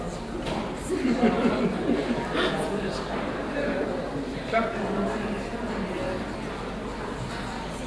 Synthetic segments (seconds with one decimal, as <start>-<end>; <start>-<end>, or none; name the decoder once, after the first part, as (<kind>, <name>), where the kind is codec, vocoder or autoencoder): 1.4-6.1 (vocoder, BigVGAN v2)